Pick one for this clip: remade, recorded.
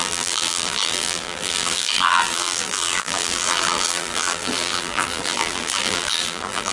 remade